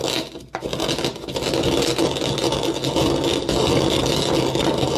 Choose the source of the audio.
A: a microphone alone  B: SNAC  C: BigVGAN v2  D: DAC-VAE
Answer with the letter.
A